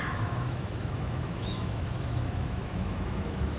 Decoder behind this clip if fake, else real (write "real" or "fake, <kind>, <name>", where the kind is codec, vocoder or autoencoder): fake, autoencoder, DAC-VAE